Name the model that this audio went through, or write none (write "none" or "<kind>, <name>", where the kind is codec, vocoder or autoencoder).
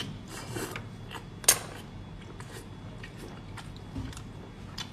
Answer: none